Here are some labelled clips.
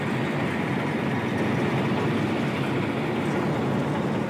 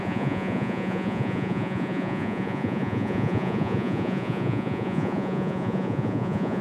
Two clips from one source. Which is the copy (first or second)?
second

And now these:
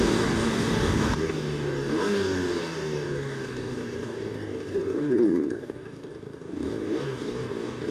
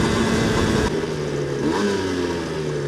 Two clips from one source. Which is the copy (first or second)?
first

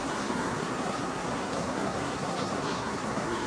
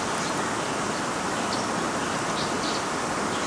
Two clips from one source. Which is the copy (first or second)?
first